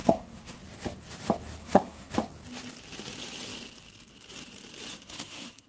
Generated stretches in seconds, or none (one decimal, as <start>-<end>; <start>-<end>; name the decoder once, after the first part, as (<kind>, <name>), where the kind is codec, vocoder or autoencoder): 0.0-0.6 (codec, SNAC); 1.6-2.1; 4.9-5.7